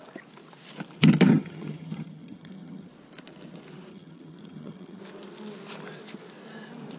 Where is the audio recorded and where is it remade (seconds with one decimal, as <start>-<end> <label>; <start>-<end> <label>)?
0.0-1.3 recorded; 1.3-2.9 remade; 2.9-3.9 recorded; 3.9-5.0 remade; 5.0-7.0 recorded